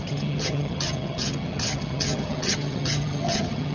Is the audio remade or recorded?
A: remade